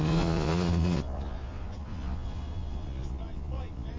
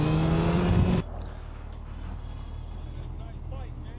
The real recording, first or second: second